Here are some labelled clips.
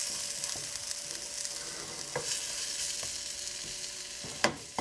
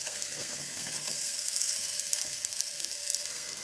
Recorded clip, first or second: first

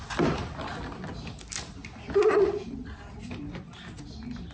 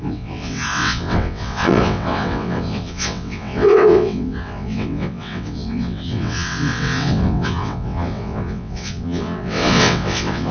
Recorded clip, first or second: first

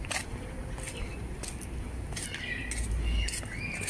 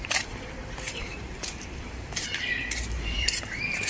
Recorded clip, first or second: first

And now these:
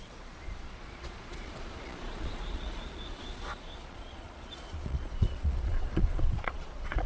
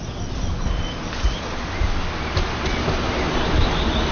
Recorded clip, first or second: second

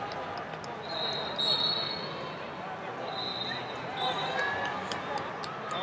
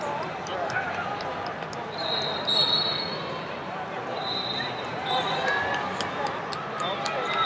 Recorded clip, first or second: first